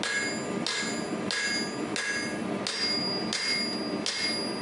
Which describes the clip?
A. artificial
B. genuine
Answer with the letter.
B